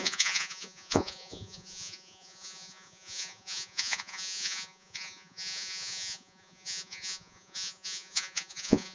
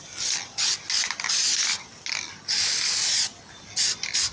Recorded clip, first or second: second